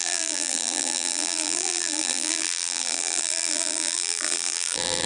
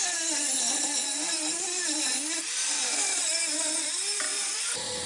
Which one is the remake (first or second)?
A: first